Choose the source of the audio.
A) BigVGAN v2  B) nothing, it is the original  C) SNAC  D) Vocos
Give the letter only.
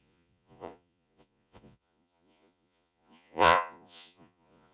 D